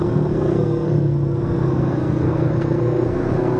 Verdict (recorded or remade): remade